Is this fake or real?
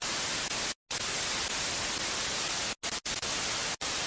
real